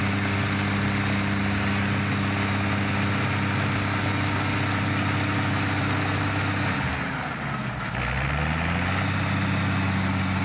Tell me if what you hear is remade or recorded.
recorded